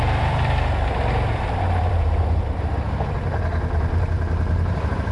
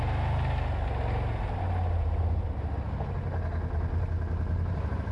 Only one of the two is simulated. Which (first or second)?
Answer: first